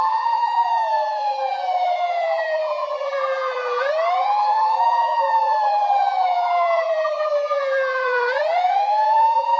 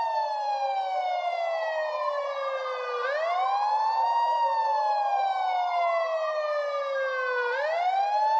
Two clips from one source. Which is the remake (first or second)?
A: first